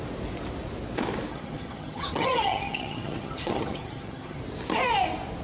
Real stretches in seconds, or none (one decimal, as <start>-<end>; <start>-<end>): 0.0-1.3; 4.4-5.4